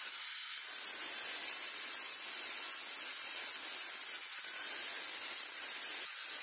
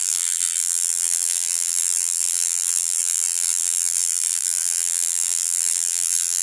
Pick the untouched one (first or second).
first